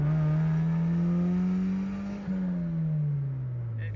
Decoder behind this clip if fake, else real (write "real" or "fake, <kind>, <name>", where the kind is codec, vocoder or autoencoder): real